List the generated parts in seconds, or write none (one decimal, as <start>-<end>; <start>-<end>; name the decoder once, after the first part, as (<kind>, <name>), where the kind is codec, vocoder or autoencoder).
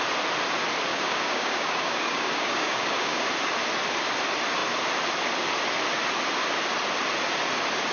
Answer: 0.9-3.3 (codec, DAC)